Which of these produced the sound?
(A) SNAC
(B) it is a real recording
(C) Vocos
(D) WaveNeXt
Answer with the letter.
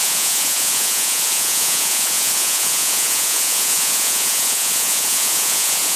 C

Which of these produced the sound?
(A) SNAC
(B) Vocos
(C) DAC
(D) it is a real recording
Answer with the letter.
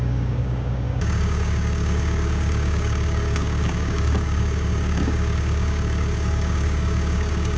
C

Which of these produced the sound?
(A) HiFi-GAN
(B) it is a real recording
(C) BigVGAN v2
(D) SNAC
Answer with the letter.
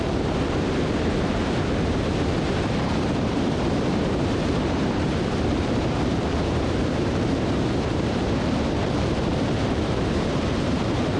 C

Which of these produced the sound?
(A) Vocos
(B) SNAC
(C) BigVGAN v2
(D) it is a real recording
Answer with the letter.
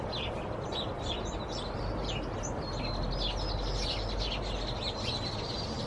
D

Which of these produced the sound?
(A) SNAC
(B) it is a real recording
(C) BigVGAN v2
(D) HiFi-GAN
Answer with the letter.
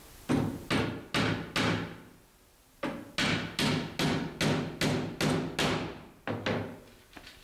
B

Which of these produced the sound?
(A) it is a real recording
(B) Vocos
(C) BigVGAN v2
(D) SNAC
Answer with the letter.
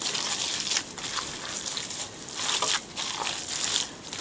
C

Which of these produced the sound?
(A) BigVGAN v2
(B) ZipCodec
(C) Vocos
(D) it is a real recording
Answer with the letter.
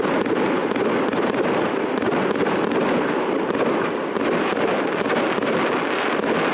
D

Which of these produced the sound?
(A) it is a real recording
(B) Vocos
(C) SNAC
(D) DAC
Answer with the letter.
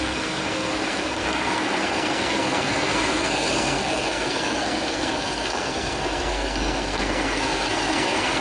C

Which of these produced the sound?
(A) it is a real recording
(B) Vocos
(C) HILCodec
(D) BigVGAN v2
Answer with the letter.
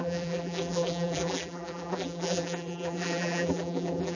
D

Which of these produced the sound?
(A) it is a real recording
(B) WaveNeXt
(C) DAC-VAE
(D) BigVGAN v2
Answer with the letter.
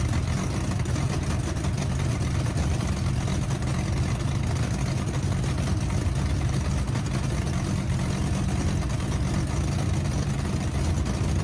A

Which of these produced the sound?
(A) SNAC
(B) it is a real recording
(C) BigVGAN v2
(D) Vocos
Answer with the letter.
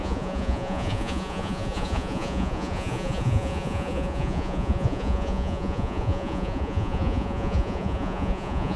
D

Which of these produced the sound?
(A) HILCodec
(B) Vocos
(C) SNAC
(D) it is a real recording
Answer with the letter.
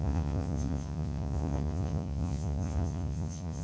B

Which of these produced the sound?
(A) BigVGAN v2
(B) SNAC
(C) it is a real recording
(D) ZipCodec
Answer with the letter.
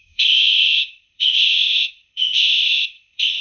D